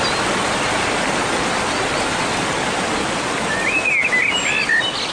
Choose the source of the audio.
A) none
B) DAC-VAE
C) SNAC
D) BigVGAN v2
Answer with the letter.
A